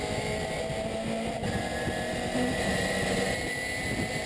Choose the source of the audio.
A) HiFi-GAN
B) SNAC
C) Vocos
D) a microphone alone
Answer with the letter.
D